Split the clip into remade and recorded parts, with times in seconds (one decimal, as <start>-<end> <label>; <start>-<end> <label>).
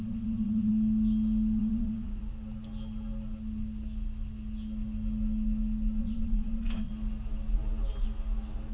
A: 0.0-0.7 remade; 0.7-1.6 recorded; 1.6-2.2 remade; 2.2-6.0 recorded; 6.0-6.9 remade; 6.9-8.7 recorded